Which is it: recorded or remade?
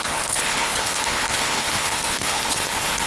remade